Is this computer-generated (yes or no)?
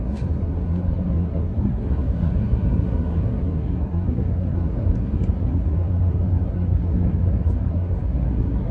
yes